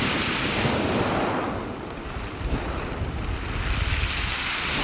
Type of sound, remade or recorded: recorded